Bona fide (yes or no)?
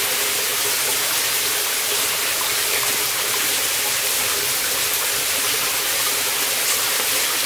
yes